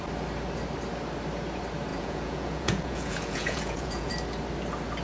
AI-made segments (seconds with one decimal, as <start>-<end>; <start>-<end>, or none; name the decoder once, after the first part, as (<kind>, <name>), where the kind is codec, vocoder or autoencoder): 1.9-4.1 (vocoder, Vocos)